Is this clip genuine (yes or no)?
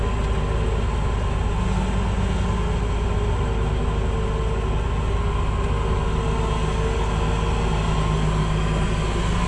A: yes